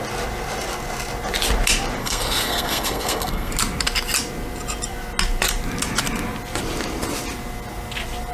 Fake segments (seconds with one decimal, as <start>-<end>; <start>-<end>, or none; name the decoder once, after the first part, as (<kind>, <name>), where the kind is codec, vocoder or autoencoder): 2.0-3.5 (codec, SNAC)